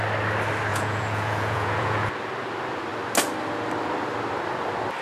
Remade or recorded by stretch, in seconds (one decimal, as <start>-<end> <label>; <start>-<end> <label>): 0.0-0.7 recorded; 0.7-2.1 remade; 2.1-5.0 recorded